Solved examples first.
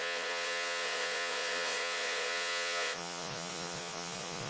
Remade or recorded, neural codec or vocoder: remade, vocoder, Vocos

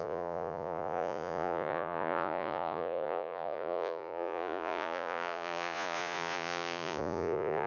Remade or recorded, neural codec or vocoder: remade, vocoder, Vocos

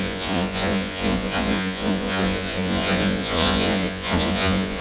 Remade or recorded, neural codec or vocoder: remade, vocoder, Vocos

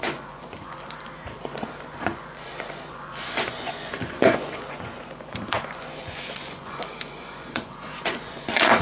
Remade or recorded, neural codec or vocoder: remade, vocoder, Vocos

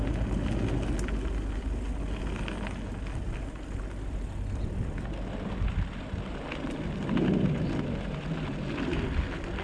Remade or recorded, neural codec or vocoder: recorded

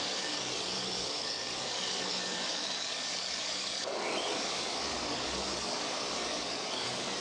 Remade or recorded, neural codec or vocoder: remade, codec, DAC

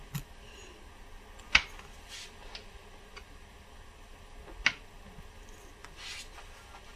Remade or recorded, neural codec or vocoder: recorded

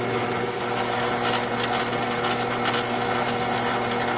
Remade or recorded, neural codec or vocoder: recorded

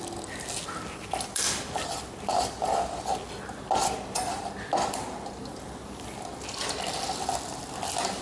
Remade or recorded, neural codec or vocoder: recorded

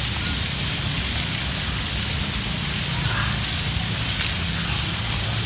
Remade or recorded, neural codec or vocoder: recorded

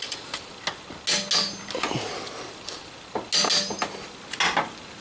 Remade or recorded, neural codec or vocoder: recorded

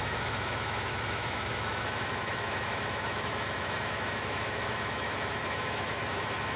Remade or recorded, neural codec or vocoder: remade, autoencoder, DAC-VAE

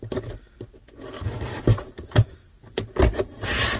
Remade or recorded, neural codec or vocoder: recorded